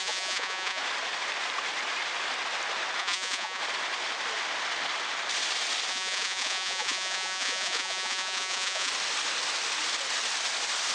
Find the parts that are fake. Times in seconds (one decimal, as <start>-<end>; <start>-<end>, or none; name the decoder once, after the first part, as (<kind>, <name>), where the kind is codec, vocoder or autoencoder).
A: 0.0-0.8 (vocoder, Vocos); 3.0-3.6; 5.9-8.9